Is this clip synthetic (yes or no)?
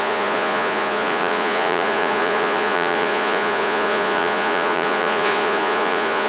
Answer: yes